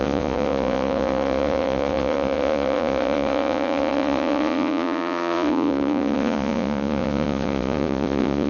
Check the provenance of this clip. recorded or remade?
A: remade